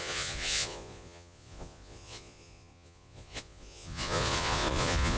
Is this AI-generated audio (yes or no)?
yes